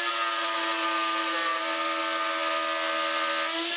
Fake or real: real